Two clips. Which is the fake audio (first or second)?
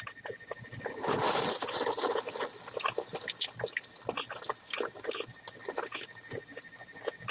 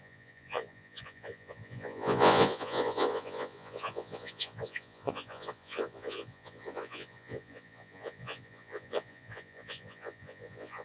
second